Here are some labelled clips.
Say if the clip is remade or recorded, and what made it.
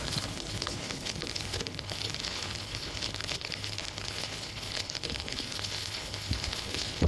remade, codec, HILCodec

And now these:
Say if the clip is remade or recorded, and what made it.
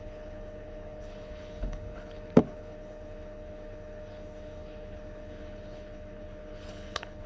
remade, codec, HILCodec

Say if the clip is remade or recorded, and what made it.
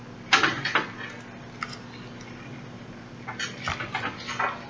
recorded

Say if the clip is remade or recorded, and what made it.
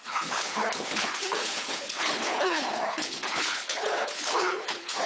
remade, codec, HILCodec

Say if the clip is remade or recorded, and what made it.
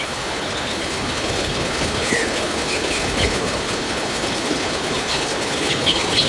remade, codec, HILCodec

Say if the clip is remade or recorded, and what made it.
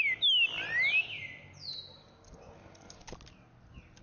recorded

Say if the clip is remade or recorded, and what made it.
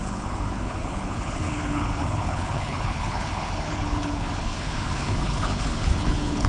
remade, codec, HILCodec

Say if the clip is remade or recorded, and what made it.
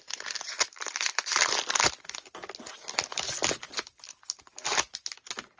recorded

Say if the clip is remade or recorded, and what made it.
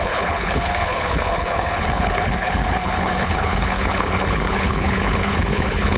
remade, codec, HILCodec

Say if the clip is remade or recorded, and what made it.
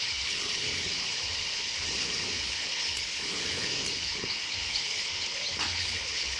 remade, codec, HILCodec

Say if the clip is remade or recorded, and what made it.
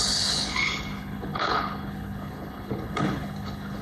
remade, codec, HILCodec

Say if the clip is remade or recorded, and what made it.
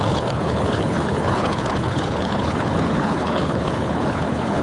remade, codec, HILCodec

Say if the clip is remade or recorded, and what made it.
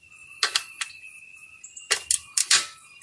recorded